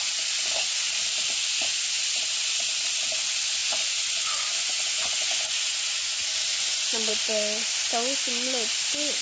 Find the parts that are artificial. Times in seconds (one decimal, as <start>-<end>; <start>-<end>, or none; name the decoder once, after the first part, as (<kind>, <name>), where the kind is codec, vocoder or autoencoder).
3.6-7.1 (vocoder, Vocos)

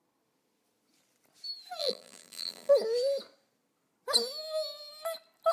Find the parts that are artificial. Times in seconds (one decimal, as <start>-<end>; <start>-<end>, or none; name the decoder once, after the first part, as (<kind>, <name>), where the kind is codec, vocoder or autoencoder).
1.8-2.7 (vocoder, BigVGAN v2)

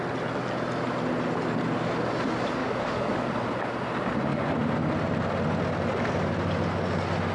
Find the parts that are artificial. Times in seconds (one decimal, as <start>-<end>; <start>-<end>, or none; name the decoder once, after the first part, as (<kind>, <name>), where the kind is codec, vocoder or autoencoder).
2.6-3.3 (codec, DAC)